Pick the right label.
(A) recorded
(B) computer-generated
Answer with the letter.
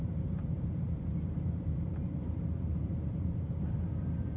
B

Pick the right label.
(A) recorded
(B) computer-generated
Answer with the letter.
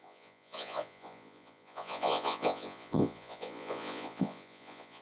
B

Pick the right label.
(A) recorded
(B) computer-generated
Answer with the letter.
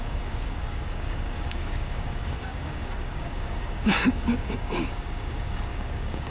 B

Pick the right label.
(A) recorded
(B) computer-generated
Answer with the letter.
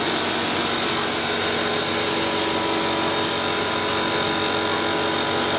A